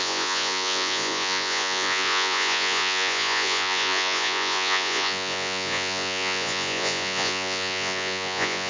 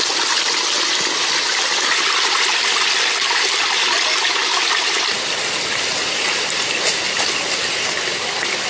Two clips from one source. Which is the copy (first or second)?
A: first